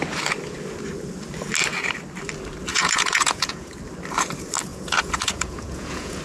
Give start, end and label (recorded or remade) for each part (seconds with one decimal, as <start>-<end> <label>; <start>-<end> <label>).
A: 0.0-2.7 recorded; 2.7-3.7 remade; 3.7-4.7 recorded; 4.7-6.2 remade